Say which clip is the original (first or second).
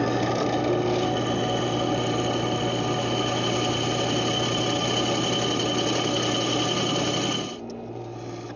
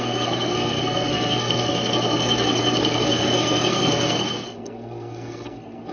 first